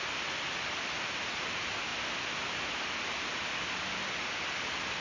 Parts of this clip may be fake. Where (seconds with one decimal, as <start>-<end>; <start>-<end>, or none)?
none